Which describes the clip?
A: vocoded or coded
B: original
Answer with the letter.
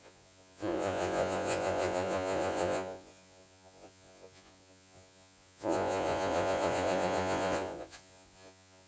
A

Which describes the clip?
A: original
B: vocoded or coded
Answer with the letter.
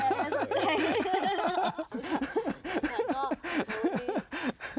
A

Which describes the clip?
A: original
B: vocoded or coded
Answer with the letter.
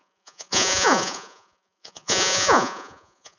B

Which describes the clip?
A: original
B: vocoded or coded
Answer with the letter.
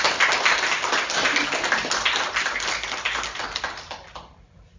A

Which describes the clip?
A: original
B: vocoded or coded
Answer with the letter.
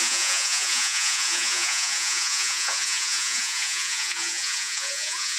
B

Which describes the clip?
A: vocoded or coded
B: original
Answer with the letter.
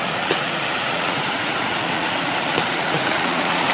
A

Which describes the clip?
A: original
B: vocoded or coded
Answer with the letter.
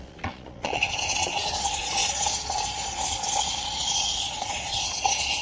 B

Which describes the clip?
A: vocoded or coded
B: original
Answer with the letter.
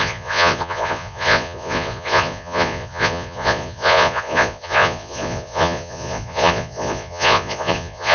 A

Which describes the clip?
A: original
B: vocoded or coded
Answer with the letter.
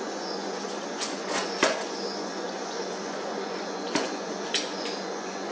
B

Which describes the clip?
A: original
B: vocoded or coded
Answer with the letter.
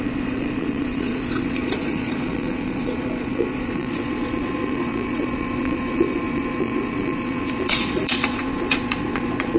B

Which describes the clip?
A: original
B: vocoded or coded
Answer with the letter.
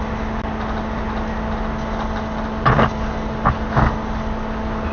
A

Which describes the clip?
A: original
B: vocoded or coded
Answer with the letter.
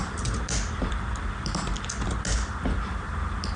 A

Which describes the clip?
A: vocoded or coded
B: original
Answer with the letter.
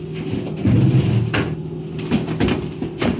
B